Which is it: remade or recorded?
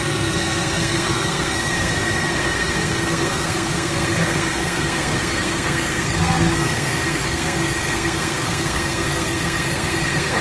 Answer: remade